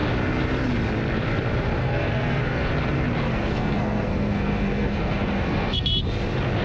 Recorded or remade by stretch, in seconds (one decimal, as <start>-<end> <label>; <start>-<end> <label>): 0.0-1.8 recorded; 1.8-2.7 remade; 2.7-3.3 recorded; 3.3-6.0 remade; 6.0-6.6 recorded